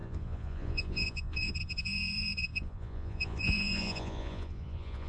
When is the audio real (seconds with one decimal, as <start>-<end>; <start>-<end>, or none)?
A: none